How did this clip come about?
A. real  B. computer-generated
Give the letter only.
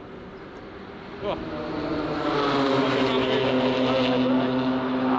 A